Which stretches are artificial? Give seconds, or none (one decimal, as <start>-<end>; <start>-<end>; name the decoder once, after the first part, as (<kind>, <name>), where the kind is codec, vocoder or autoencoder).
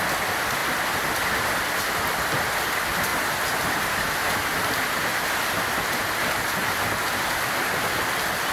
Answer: none